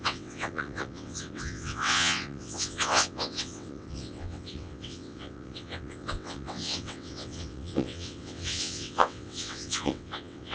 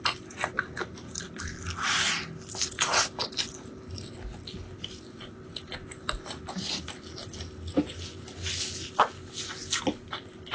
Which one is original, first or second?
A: second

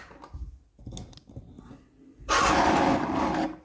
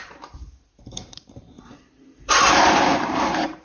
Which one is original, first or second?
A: first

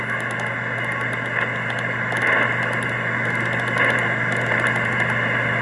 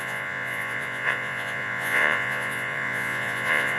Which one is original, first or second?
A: first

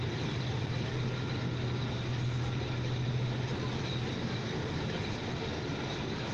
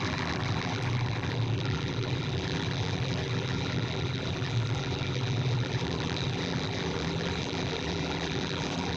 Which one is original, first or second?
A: first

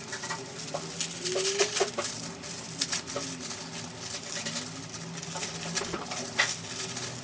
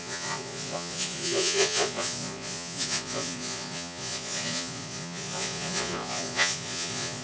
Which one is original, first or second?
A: first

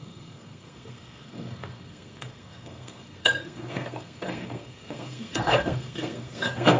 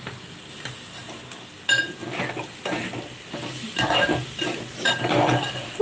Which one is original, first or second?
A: second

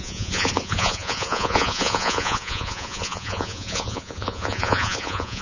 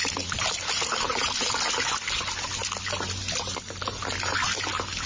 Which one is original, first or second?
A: second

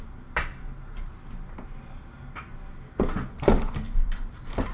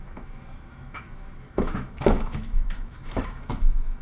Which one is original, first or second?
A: first